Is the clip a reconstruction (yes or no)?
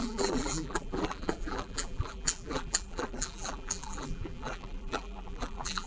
yes